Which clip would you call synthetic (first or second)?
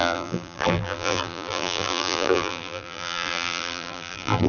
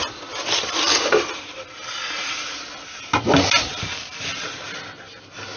first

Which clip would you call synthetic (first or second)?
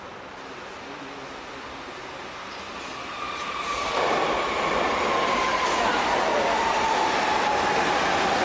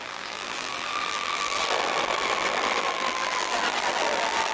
second